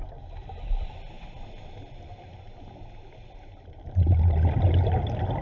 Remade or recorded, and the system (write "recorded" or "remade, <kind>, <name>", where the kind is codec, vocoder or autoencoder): recorded